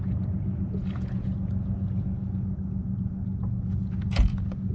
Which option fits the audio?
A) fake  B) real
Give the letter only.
A